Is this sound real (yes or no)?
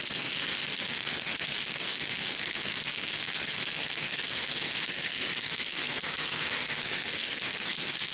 no